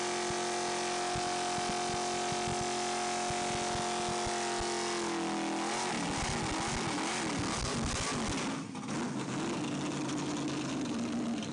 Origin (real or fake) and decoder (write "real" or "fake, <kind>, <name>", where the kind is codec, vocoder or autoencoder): real